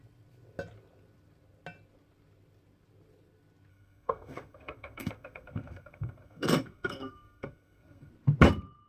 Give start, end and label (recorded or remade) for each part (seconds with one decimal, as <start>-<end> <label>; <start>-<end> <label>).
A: 0.0-3.7 recorded; 3.7-8.1 remade; 8.1-8.9 recorded